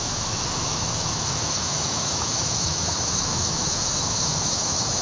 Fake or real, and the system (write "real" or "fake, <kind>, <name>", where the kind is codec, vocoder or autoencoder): fake, autoencoder, DAC-VAE